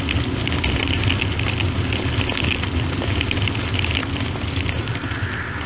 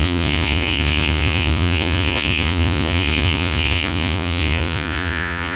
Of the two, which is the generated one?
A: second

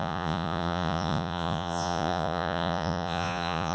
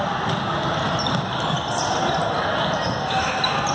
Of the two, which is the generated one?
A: first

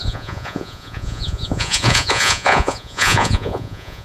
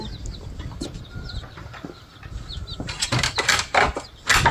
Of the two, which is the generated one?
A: first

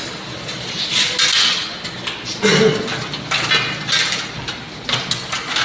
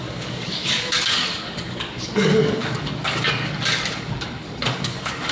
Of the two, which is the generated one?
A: second